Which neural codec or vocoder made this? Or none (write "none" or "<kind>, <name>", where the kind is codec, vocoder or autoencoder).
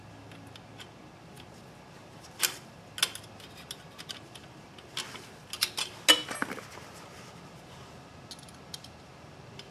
none